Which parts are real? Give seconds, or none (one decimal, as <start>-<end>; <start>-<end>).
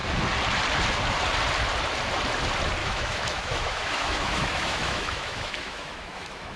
0.0-2.8